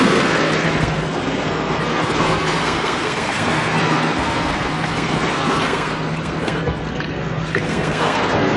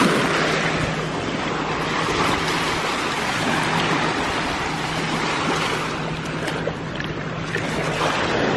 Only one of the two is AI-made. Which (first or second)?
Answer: first